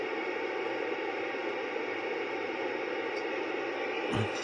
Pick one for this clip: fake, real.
real